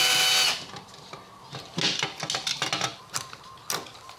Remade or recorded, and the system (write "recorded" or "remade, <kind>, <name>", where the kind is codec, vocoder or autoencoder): recorded